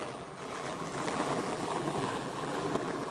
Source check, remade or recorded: remade